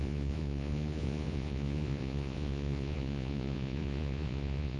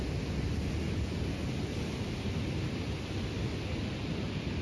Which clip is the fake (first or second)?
first